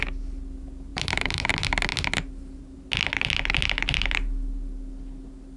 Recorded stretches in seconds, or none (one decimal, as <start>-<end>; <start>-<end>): 0.0-0.9; 1.5-5.6